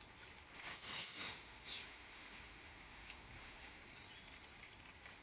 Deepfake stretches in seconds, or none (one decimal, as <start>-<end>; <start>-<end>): 0.7-3.8